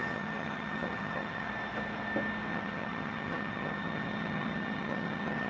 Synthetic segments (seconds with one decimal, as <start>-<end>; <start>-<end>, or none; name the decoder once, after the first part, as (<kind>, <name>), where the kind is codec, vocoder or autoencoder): 0.0-1.5 (vocoder, HiFi-GAN); 2.5-5.5